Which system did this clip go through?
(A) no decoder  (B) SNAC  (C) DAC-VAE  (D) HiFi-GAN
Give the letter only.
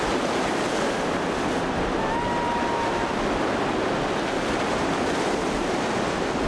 A